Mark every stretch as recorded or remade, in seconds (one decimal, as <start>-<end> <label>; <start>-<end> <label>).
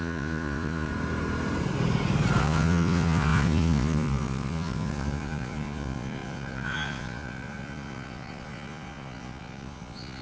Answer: 0.0-0.9 remade; 0.9-2.4 recorded; 2.4-10.2 remade